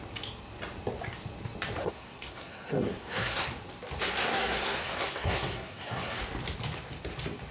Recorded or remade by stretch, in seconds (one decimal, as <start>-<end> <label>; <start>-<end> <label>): 0.0-1.8 recorded; 1.8-3.5 remade; 3.5-4.2 recorded; 4.2-6.2 remade; 6.2-7.5 recorded

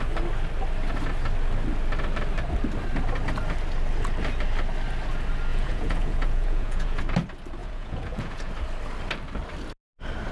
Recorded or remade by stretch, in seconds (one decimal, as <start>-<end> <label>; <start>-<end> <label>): 0.0-5.5 recorded; 5.5-7.0 remade; 7.0-7.6 recorded; 7.6-8.5 remade; 8.5-10.3 recorded

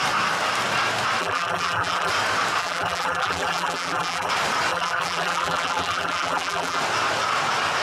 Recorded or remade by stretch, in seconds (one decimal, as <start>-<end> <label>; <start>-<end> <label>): 0.0-1.2 recorded; 1.2-2.1 remade; 2.1-2.6 recorded; 2.6-4.3 remade; 4.3-4.7 recorded; 4.7-6.8 remade; 6.8-7.8 recorded

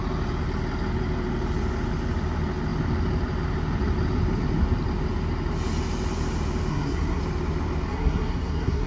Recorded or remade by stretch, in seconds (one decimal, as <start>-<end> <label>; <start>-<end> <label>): 0.0-6.7 recorded; 6.7-7.2 remade; 7.2-7.9 recorded; 7.9-8.9 remade

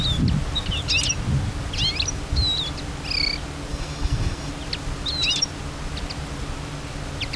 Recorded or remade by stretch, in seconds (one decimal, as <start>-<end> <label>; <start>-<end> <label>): 0.0-3.7 recorded; 3.7-4.5 remade; 4.5-7.4 recorded

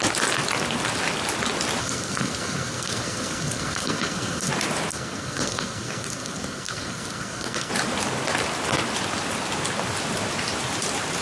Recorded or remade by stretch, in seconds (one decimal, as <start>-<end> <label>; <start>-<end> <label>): 0.0-1.8 recorded; 1.8-4.5 remade; 4.5-4.9 recorded; 4.9-7.7 remade; 7.7-11.2 recorded